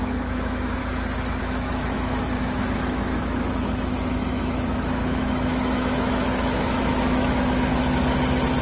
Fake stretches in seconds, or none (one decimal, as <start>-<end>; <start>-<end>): 0.0-0.8; 1.4-7.7